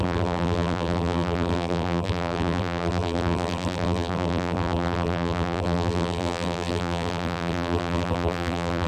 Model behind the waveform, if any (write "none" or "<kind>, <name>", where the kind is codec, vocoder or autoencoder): vocoder, BigVGAN v2